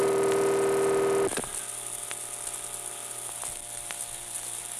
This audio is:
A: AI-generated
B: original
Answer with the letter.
B